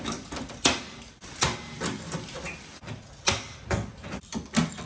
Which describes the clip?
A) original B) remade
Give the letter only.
B